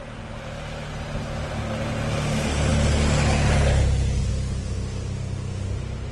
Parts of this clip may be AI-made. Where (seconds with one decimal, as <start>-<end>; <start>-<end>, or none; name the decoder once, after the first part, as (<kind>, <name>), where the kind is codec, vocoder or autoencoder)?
none